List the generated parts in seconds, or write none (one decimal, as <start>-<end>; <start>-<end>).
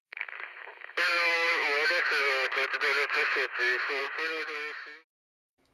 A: 0.0-5.7